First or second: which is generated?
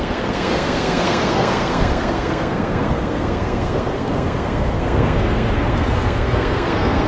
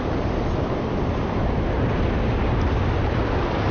first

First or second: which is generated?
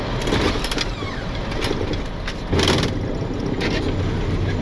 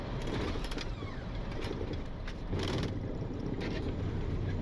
second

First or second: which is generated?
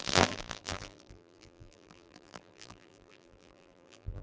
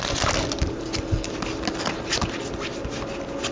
first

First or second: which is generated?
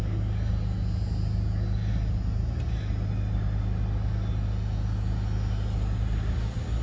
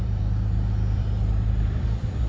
second